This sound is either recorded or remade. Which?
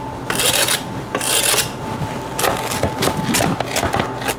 recorded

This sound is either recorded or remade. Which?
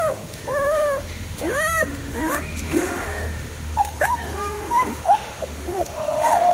remade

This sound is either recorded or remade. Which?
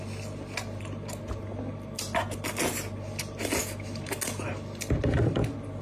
recorded